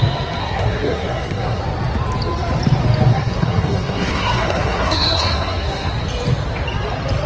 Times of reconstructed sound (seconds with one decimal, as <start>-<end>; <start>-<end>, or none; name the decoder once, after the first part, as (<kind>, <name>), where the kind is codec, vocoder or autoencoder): 0.4-1.6 (codec, SNAC); 3.1-5.9